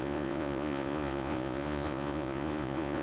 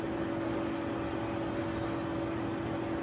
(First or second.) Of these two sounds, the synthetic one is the first